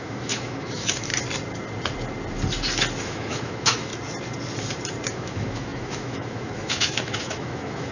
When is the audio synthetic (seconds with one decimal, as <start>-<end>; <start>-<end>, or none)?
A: 0.0-1.1; 3.0-3.9; 5.1-7.9